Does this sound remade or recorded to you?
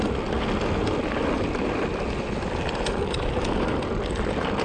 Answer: remade